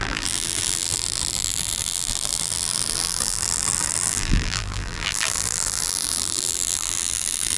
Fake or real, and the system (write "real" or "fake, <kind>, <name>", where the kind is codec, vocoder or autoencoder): fake, vocoder, BigVGAN v2